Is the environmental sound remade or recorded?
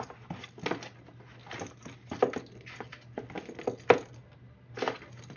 recorded